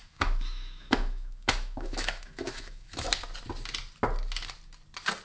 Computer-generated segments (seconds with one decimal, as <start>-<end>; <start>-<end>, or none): 0.0-3.1